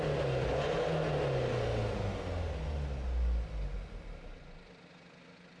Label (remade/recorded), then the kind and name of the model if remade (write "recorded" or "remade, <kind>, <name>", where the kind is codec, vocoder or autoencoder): recorded